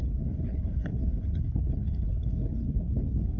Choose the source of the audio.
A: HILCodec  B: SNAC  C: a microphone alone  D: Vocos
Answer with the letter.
A